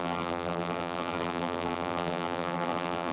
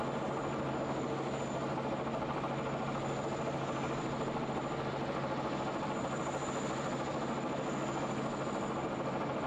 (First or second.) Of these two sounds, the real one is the second